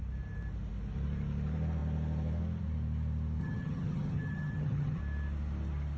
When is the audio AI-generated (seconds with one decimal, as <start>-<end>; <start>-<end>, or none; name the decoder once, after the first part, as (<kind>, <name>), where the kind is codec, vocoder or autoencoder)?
3.4-5.0 (vocoder, HiFi-GAN)